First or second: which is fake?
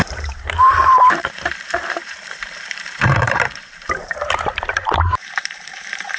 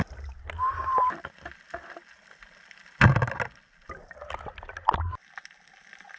first